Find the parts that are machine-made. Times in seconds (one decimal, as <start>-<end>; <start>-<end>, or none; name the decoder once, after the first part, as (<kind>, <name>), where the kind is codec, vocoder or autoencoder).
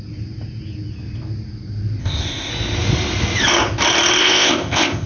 2.0-2.5 (codec, ZipCodec); 4.2-5.1